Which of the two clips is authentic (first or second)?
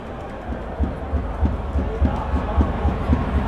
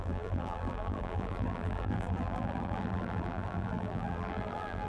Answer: first